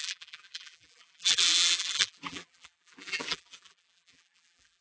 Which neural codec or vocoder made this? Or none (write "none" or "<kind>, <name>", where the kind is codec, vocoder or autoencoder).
vocoder, BigVGAN v2